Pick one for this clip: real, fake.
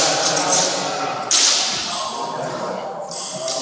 real